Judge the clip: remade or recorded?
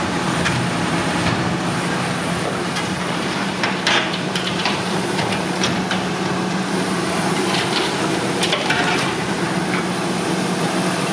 remade